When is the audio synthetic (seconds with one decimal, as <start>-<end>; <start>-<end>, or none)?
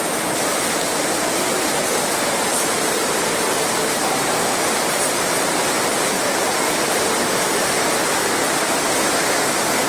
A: 2.5-4.3